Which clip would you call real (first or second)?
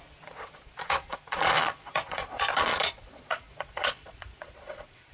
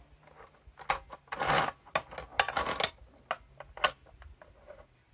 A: second